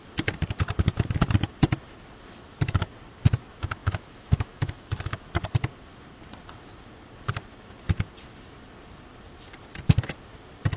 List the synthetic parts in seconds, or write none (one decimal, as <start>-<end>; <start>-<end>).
3.8-5.3